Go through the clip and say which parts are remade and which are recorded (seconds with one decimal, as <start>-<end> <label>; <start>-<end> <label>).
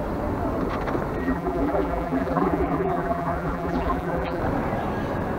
0.0-1.2 recorded; 1.2-4.4 remade; 4.4-5.4 recorded